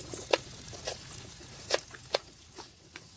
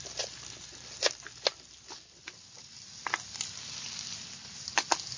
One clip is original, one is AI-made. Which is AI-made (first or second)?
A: first